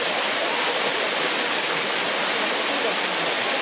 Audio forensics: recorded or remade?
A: recorded